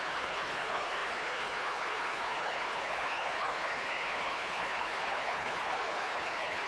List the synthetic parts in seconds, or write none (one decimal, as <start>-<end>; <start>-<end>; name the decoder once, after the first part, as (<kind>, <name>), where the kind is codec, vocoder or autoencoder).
0.0-6.7 (codec, HILCodec)